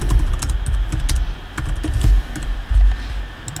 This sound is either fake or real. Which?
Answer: real